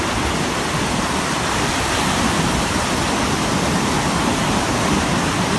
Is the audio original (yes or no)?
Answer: yes